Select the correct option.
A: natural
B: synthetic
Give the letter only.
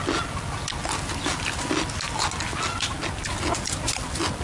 A